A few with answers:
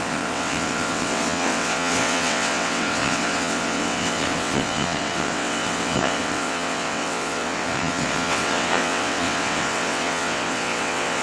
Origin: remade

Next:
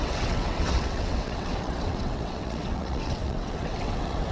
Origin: remade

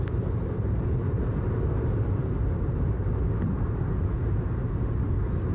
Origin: recorded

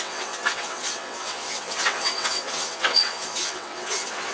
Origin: remade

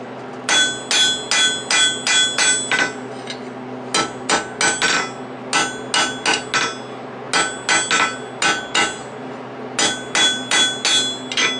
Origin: recorded